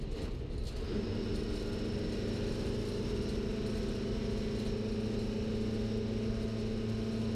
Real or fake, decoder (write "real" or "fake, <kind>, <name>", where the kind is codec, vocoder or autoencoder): real